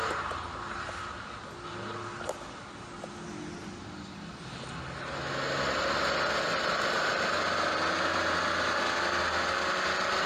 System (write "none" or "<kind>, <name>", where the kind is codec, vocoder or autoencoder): none